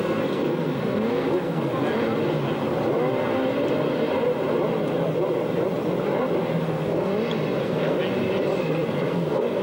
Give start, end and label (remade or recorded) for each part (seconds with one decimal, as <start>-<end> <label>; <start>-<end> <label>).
0.0-1.7 remade; 1.7-6.6 recorded; 6.6-7.1 remade; 7.1-7.6 recorded; 7.6-8.0 remade; 8.0-8.6 recorded; 8.6-9.6 remade